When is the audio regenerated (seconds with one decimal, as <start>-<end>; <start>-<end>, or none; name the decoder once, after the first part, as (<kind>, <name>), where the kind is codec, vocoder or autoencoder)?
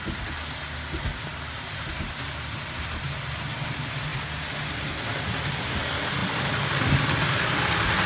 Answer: none